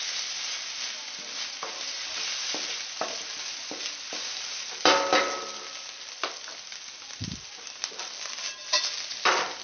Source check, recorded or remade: recorded